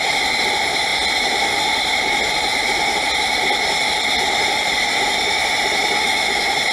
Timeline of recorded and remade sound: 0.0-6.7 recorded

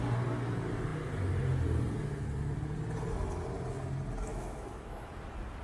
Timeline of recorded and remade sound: 0.0-4.3 recorded; 4.3-5.1 remade; 5.1-5.6 recorded

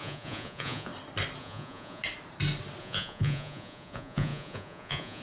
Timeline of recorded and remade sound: 0.0-0.9 remade; 0.9-1.4 recorded; 1.4-2.0 remade; 2.0-2.8 recorded; 2.8-5.2 remade

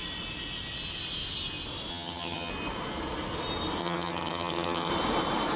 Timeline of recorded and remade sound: 0.0-1.9 recorded; 1.9-2.5 remade; 2.5-3.8 recorded; 3.8-4.9 remade; 4.9-5.6 recorded

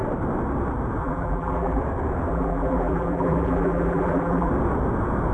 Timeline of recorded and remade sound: 0.0-1.0 recorded; 1.0-1.8 remade; 1.8-2.3 recorded; 2.3-4.5 remade; 4.5-5.3 recorded

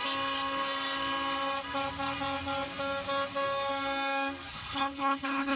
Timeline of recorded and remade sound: 0.0-4.5 recorded; 4.5-5.6 remade